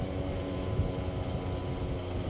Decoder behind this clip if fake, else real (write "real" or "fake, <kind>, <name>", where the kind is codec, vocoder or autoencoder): real